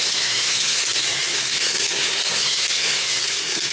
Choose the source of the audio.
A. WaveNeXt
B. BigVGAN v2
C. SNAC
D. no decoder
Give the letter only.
C